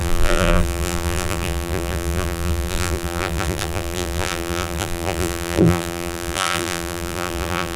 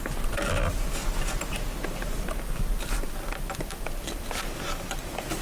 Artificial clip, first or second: first